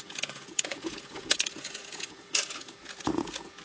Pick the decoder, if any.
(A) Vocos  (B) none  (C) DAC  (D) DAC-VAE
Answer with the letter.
A